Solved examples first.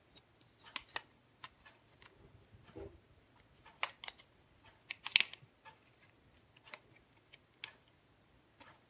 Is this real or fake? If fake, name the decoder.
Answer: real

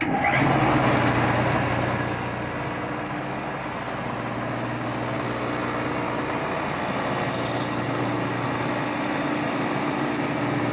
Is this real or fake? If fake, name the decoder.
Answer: real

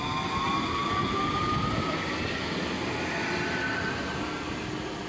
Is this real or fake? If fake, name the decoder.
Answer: real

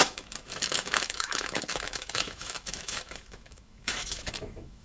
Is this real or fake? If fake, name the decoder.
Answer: fake, autoencoder, DAC-VAE